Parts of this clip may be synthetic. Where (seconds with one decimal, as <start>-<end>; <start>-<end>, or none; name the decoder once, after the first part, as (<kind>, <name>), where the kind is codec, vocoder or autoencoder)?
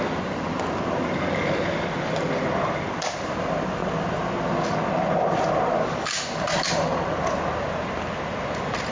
none